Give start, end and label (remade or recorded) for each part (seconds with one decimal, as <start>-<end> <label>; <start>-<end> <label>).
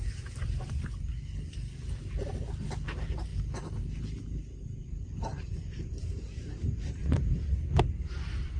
0.0-1.1 remade; 1.1-1.8 recorded; 1.8-8.6 remade